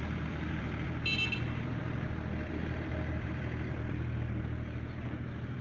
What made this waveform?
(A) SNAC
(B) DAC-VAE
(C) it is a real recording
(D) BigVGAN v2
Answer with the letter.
D